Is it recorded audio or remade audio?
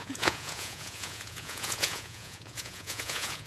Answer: remade